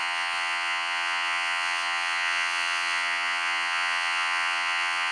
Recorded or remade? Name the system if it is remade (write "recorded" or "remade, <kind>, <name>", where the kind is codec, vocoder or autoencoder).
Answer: remade, vocoder, WaveNeXt